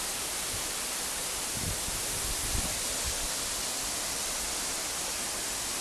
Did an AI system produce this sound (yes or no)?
no